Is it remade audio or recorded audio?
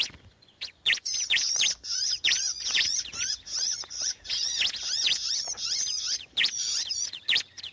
remade